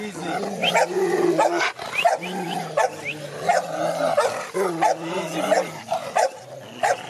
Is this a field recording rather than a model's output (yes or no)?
yes